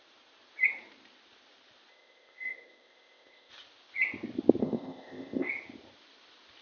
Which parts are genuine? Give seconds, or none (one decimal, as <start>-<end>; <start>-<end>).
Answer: 0.0-1.9; 3.5-4.6; 5.5-6.6